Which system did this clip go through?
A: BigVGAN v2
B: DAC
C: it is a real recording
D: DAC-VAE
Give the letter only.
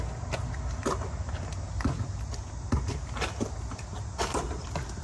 C